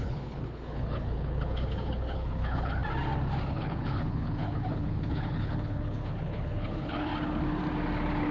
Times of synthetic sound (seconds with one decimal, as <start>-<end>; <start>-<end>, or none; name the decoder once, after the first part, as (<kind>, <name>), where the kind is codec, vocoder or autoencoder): 0.0-2.8 (codec, HILCodec); 3.5-7.1